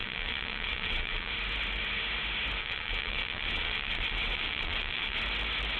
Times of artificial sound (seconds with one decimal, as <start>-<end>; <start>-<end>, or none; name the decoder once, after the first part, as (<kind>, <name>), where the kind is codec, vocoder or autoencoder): 0.0-1.3 (vocoder, WaveNeXt); 2.6-5.2